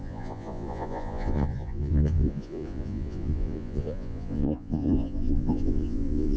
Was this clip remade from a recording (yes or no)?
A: yes